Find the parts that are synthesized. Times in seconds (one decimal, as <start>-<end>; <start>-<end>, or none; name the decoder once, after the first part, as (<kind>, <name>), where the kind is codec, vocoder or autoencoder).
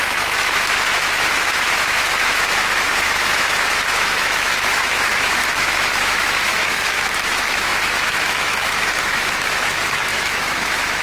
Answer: 0.0-11.0 (autoencoder, DAC-VAE)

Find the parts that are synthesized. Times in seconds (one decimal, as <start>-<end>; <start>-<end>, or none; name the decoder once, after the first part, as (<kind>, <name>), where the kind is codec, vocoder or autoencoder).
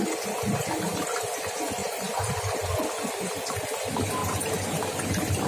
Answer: 1.8-2.4 (vocoder, BigVGAN v2); 4.2-4.8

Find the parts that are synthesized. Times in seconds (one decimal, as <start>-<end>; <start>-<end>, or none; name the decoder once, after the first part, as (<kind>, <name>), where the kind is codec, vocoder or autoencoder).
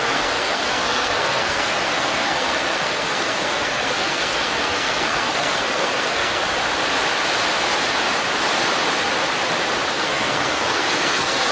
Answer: 0.0-6.4 (codec, SNAC); 9.9-11.5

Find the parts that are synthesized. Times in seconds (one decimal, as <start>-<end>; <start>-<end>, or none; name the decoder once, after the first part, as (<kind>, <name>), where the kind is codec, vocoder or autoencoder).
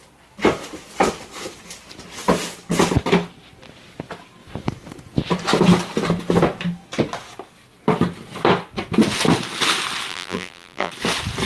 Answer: 10.1-10.9 (vocoder, BigVGAN v2)